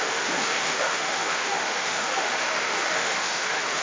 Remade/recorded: remade